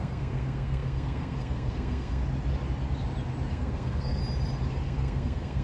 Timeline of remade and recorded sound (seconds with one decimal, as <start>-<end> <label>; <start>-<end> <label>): 0.0-2.2 remade; 2.2-3.5 recorded; 3.5-4.2 remade; 4.2-4.8 recorded; 4.8-5.6 remade

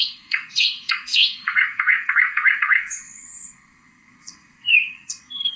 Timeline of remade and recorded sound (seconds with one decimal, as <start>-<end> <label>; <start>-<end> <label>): 0.0-5.6 remade

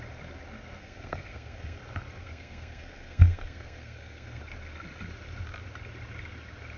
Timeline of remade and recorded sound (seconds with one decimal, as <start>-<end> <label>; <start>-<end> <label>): 0.0-0.8 recorded; 0.8-1.8 remade; 1.8-2.2 recorded; 2.2-4.4 remade; 4.4-6.8 recorded